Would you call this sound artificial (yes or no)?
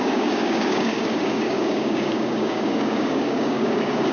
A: yes